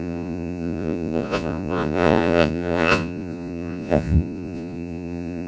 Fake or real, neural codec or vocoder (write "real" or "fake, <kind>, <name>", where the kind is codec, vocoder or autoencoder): fake, vocoder, Vocos